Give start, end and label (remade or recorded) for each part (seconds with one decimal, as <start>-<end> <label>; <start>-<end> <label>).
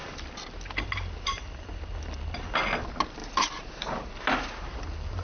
0.0-3.2 recorded; 3.2-4.1 remade; 4.1-5.2 recorded